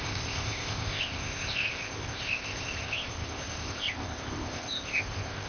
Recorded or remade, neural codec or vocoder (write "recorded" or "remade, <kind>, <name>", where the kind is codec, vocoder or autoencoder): remade, codec, ZipCodec